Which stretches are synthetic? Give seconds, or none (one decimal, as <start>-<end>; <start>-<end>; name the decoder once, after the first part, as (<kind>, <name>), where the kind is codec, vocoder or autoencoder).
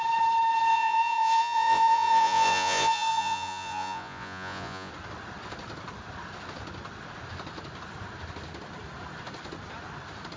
0.7-4.9 (vocoder, Vocos)